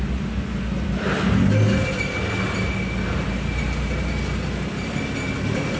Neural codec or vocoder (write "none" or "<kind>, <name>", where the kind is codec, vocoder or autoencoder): none